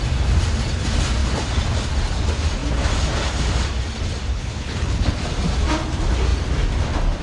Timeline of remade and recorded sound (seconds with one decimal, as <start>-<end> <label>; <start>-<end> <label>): 0.0-4.3 recorded; 4.3-5.2 remade; 5.2-7.2 recorded